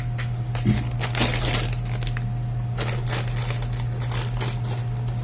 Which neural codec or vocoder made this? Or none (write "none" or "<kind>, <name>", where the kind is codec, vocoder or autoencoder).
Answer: none